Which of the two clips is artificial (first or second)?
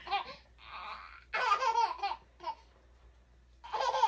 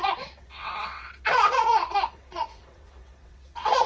second